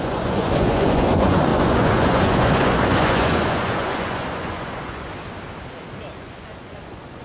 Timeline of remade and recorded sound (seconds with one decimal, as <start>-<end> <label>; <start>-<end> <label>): 0.0-5.1 remade; 5.1-6.2 recorded; 6.2-7.2 remade